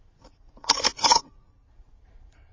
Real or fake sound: fake